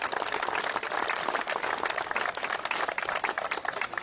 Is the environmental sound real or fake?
real